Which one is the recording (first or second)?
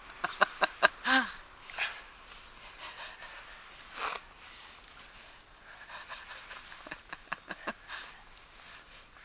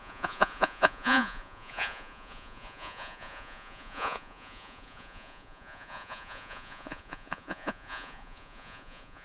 first